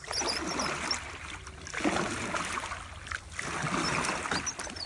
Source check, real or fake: real